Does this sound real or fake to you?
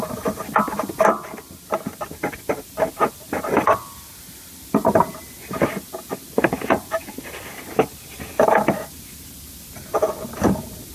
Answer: real